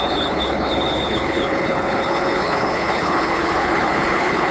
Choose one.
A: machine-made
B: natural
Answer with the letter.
A